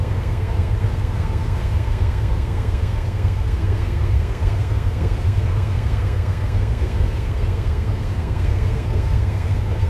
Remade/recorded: remade